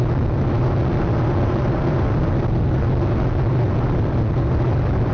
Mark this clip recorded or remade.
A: recorded